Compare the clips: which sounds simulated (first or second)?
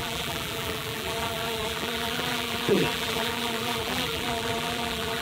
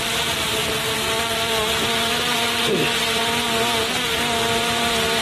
first